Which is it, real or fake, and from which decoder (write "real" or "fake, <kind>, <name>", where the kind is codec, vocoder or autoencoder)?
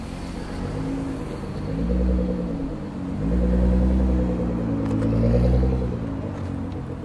real